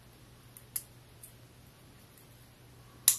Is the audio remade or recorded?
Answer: recorded